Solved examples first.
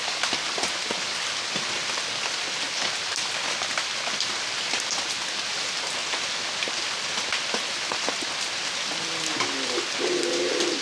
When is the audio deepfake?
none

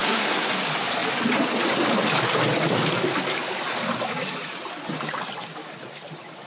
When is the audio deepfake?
0.0-0.5 (codec, SNAC)

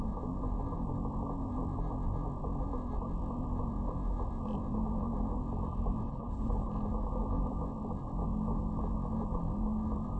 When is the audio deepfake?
6.1-6.7 (codec, HILCodec)

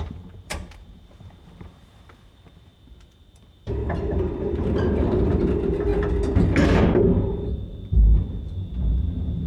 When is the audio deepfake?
0.0-5.9 (vocoder, BigVGAN v2); 7.0-9.5

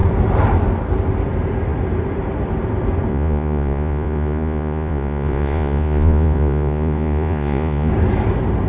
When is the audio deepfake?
3.1-7.9 (vocoder, Vocos)

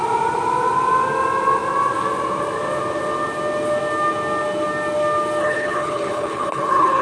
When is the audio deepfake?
5.4-7.0 (codec, HILCodec)

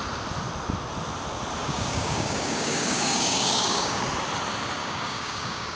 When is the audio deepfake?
1.6-4.0 (codec, DAC); 4.8-5.8